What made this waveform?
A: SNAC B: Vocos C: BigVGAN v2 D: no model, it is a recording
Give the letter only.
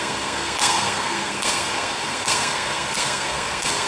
A